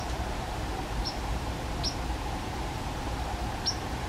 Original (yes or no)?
no